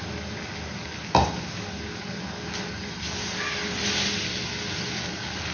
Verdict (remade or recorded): recorded